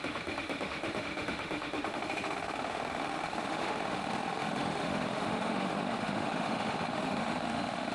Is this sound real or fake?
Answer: fake